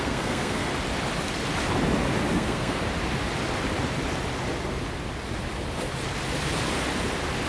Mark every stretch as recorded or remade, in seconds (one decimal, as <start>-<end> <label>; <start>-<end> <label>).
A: 0.0-0.7 remade; 0.7-2.3 recorded; 2.3-2.8 remade; 2.8-7.5 recorded